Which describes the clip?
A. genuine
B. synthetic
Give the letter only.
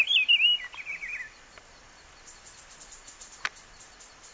A